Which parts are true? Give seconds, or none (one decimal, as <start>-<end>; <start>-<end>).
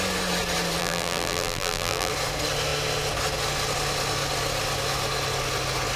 0.0-0.8; 2.1-6.0